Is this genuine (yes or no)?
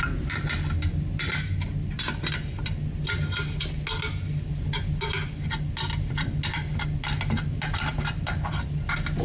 yes